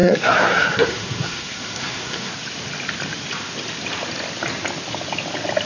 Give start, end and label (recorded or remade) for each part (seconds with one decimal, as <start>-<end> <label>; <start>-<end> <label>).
0.0-2.3 remade; 2.3-5.7 recorded

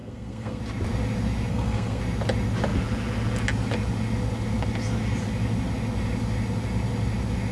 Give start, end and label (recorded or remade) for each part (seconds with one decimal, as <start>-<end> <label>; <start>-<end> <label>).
0.0-0.6 remade; 0.6-1.5 recorded; 1.5-2.0 remade; 2.0-7.5 recorded

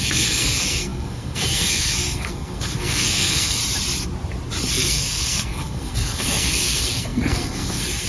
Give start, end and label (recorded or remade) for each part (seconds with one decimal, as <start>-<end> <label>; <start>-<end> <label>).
0.0-3.6 remade; 3.6-4.7 recorded; 4.7-8.1 remade

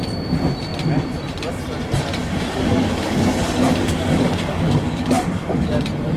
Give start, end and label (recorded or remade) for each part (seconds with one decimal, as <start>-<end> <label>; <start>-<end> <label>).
0.0-2.2 recorded; 2.2-5.8 remade; 5.8-6.2 recorded

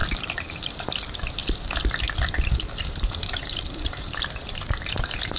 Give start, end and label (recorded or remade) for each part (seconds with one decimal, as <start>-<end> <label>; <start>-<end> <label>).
0.0-0.5 recorded; 0.5-1.4 remade; 1.4-2.8 recorded; 2.8-5.4 remade